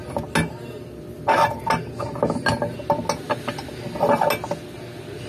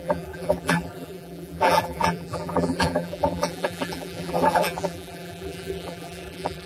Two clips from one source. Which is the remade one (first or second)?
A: second